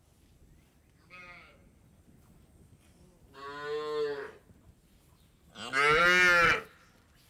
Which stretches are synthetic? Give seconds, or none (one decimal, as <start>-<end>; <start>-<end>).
none